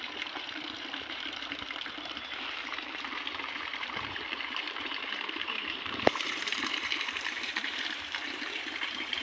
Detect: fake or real fake